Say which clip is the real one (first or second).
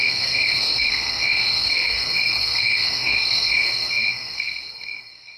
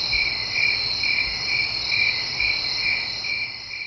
second